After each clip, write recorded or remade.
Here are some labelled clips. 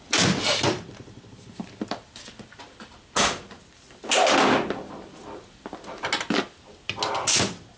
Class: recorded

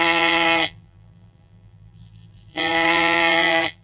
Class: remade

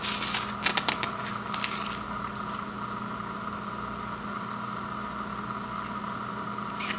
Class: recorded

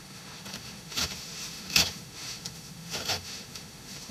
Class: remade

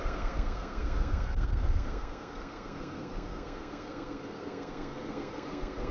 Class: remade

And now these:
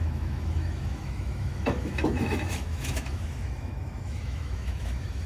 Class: remade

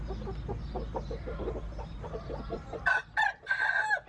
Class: recorded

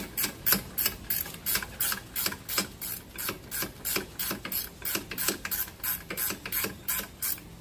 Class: recorded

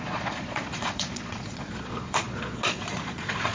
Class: remade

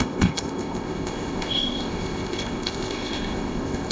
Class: remade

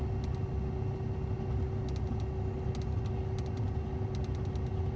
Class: recorded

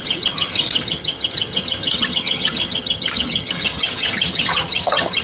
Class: remade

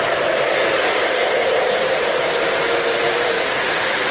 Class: remade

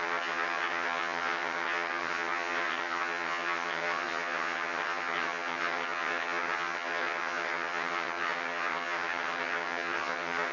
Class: remade